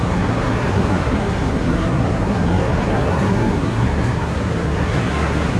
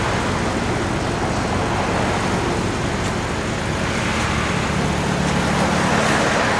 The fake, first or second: first